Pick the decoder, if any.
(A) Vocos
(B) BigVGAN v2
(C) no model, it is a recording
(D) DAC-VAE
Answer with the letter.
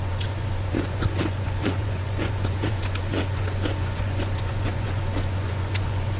A